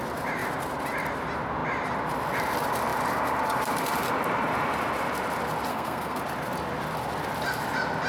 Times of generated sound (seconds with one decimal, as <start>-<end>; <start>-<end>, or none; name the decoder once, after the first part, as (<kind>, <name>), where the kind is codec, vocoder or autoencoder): 5.7-6.2 (codec, SNAC)